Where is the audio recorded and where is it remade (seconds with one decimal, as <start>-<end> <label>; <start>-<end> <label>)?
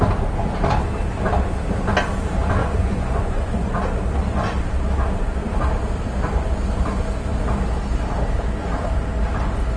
0.0-2.6 recorded; 2.6-3.7 remade; 3.7-9.8 recorded